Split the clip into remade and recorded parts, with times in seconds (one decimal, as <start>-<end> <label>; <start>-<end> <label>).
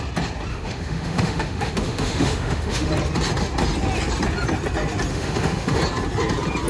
0.0-0.5 recorded; 0.5-2.9 remade; 2.9-5.1 recorded; 5.1-5.8 remade; 5.8-6.7 recorded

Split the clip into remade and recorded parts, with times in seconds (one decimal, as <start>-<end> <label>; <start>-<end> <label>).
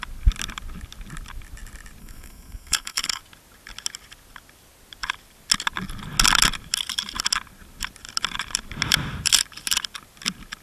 0.0-2.0 recorded; 2.0-3.2 remade; 3.2-10.6 recorded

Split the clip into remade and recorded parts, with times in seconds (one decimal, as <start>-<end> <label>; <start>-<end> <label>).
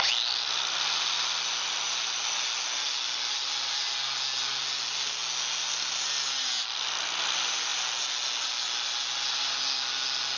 0.0-10.4 recorded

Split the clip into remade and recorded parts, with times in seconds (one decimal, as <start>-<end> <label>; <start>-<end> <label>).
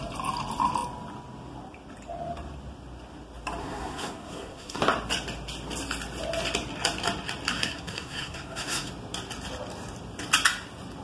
0.0-3.6 recorded; 3.6-4.8 remade; 4.8-7.5 recorded; 7.5-8.9 remade; 8.9-11.0 recorded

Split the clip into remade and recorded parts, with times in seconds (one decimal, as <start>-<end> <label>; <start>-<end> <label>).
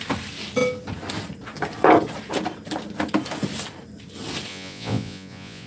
0.0-4.5 recorded; 4.5-5.7 remade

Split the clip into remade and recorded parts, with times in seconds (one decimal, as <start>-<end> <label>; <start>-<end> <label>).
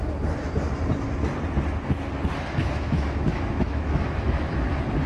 0.0-2.6 recorded; 2.6-4.5 remade; 4.5-5.1 recorded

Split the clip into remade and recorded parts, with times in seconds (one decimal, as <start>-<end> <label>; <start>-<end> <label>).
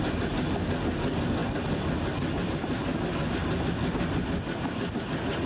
0.0-5.5 recorded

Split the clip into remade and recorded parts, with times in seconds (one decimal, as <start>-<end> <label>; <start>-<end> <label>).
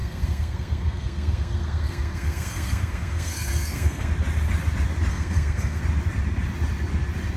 0.0-4.1 remade; 4.1-5.1 recorded; 5.1-5.8 remade; 5.8-7.4 recorded